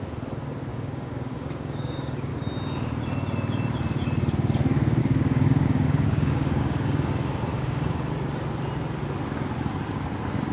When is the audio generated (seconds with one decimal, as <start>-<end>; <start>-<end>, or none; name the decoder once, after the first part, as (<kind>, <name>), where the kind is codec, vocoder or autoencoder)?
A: 0.7-2.3 (codec, DAC); 5.0-7.1; 7.5-8.1